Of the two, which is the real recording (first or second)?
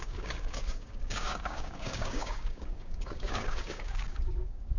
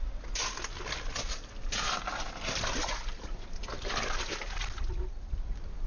second